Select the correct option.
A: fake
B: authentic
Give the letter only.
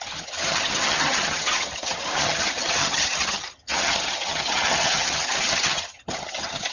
A